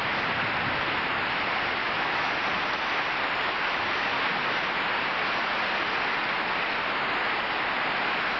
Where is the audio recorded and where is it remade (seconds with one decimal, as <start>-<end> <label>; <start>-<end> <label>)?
0.0-1.8 recorded; 1.8-2.3 remade; 2.3-8.4 recorded